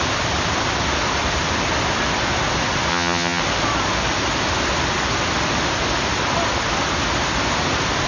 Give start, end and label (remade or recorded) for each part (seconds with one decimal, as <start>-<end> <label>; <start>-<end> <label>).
0.0-2.9 recorded; 2.9-3.4 remade; 3.4-8.1 recorded